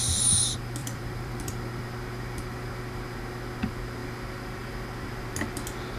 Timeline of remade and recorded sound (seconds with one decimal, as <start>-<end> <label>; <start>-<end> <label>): 0.0-0.8 recorded; 0.8-1.8 remade; 1.8-6.0 recorded